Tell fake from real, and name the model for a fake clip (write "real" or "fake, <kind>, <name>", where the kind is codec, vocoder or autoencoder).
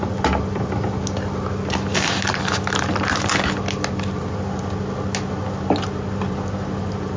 real